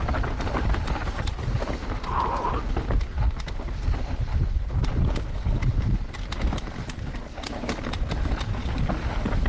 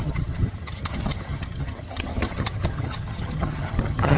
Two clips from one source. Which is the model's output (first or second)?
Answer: second